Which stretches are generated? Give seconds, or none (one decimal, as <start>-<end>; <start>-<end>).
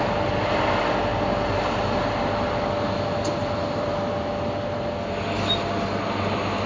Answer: none